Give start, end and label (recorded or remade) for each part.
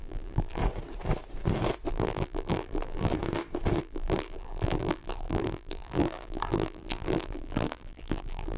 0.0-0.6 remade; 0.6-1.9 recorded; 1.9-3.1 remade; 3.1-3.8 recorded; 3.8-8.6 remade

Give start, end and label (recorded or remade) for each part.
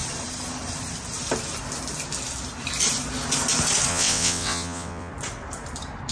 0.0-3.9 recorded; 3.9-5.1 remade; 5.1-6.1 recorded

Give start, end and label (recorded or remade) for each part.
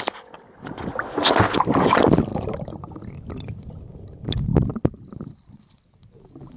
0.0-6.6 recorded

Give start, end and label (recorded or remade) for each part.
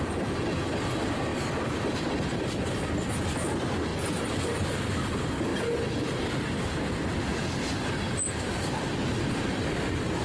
0.0-10.2 remade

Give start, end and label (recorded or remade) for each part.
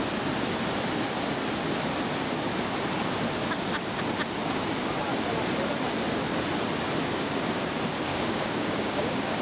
0.0-8.1 recorded; 8.1-9.4 remade